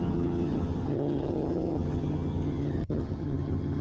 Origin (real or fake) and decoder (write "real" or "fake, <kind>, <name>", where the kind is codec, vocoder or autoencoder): fake, vocoder, HiFi-GAN